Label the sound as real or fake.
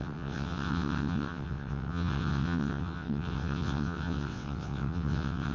fake